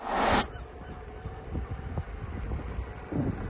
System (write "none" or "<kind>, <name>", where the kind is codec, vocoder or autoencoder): none